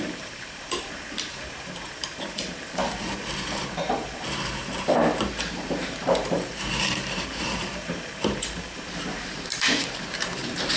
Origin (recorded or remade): remade